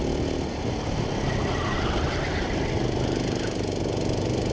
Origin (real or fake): real